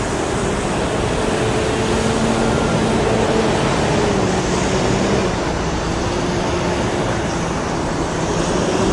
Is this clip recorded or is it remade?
recorded